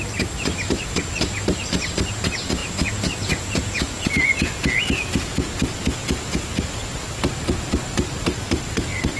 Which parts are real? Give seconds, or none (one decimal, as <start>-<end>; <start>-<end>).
0.0-2.6; 6.6-9.2